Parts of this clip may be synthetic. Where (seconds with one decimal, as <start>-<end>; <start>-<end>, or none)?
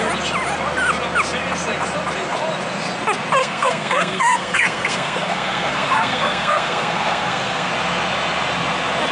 3.4-7.7